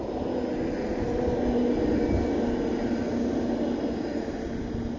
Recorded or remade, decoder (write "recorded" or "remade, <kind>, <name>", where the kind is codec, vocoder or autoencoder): recorded